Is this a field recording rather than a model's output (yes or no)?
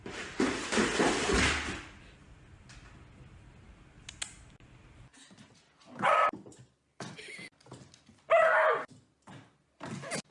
yes